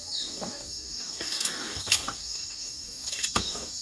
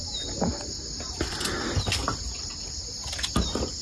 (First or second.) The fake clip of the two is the first